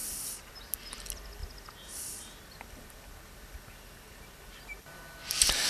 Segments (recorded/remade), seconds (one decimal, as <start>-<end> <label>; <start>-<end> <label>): 0.0-0.5 remade; 0.5-1.4 recorded; 1.4-4.8 remade; 4.8-5.7 recorded